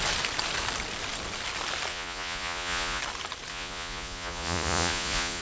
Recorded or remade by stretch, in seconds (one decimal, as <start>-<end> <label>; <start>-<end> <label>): 0.0-1.9 recorded; 1.9-3.0 remade; 3.0-3.5 recorded; 3.5-5.4 remade